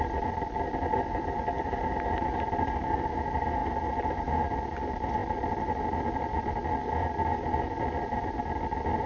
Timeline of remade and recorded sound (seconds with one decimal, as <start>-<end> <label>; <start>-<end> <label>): 0.0-9.1 recorded